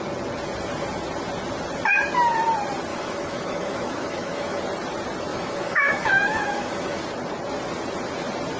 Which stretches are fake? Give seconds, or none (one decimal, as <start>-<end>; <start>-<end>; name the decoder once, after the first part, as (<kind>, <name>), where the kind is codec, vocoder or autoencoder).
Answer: 2.9-4.6 (autoencoder, DAC-VAE); 5.3-7.0